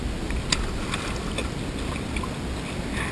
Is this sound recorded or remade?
recorded